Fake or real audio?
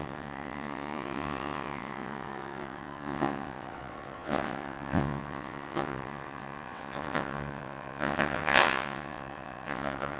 fake